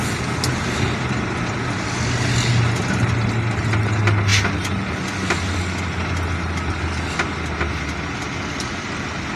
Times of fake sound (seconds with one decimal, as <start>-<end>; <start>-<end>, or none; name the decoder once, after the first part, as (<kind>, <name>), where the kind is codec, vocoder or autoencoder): none